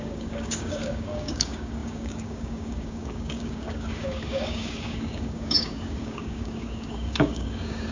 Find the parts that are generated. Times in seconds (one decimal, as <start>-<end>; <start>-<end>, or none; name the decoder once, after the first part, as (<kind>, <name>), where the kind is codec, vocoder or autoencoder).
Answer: 0.0-7.9 (codec, DAC)